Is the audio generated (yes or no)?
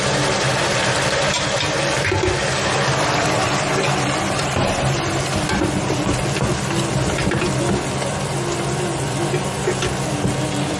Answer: no